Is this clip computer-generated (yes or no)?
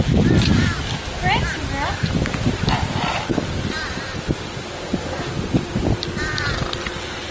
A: no